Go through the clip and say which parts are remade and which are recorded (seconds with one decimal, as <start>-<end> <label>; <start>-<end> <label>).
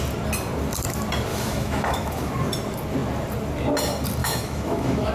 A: 0.0-1.3 recorded; 1.3-2.3 remade; 2.3-4.2 recorded; 4.2-5.1 remade